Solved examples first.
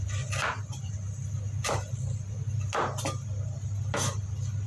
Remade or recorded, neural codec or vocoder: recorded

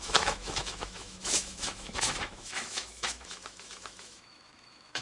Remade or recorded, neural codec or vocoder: remade, autoencoder, DAC-VAE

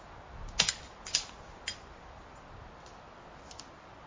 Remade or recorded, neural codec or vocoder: recorded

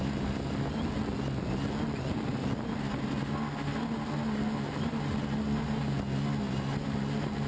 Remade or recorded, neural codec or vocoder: recorded